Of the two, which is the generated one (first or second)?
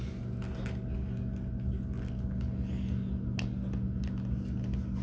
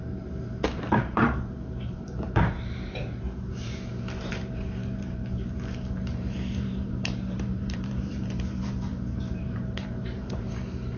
second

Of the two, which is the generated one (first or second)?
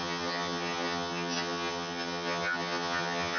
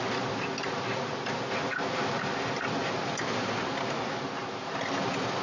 first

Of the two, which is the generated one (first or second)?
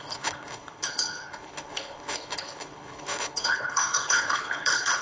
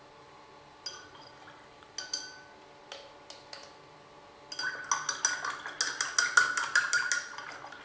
first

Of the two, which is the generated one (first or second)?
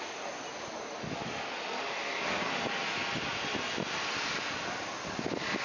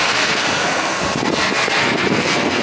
second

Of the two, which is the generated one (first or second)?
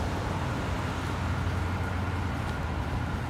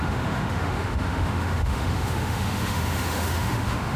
second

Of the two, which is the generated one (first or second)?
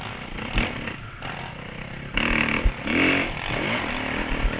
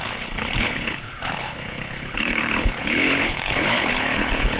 second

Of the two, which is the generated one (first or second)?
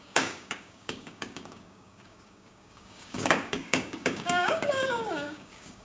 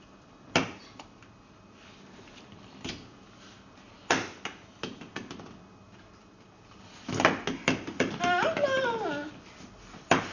first